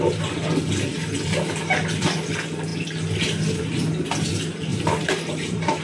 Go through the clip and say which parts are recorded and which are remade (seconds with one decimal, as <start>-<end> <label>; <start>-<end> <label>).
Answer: 0.0-4.7 recorded; 4.7-5.8 remade